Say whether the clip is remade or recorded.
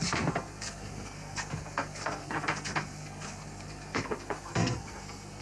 remade